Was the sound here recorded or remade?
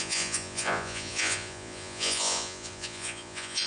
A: remade